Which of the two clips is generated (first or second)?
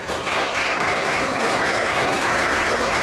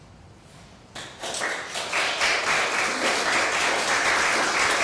first